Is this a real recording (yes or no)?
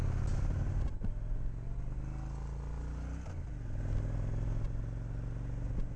yes